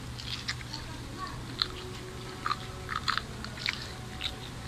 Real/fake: real